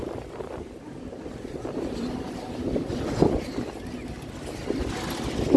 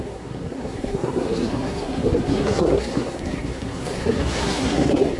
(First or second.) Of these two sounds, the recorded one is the first